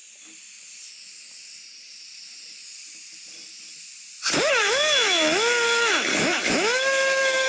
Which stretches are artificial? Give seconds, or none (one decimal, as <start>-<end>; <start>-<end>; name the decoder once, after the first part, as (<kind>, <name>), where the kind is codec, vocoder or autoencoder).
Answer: 6.1-7.5 (autoencoder, DAC-VAE)